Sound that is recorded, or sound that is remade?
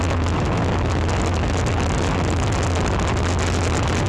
recorded